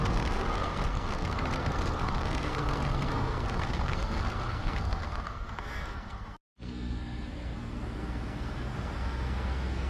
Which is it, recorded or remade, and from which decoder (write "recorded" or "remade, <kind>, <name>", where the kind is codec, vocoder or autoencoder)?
remade, codec, SNAC